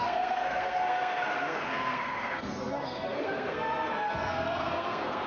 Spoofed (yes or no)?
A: yes